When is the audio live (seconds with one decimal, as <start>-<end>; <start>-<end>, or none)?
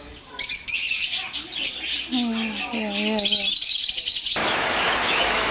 0.0-4.4